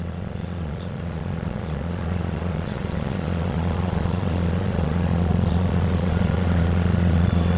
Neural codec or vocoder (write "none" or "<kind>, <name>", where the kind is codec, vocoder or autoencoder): vocoder, Vocos